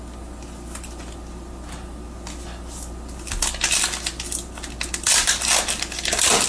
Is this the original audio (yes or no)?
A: yes